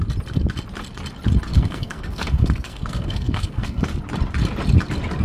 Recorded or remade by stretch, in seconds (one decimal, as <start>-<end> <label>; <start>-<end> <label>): 0.0-1.5 recorded; 1.5-4.0 remade; 4.0-5.2 recorded